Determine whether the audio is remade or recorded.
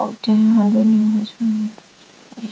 remade